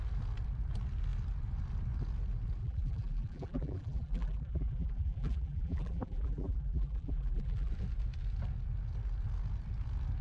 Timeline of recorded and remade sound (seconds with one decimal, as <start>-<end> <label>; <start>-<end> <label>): 0.0-2.6 recorded; 2.6-7.7 remade; 7.7-10.2 recorded